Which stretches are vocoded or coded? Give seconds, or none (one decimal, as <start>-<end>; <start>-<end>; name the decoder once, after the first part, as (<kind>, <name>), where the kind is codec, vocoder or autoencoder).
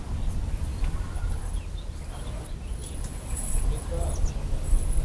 none